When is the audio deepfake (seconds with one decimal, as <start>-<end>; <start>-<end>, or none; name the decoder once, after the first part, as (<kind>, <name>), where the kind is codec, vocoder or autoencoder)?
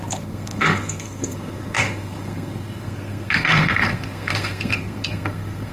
0.0-5.7 (codec, SNAC)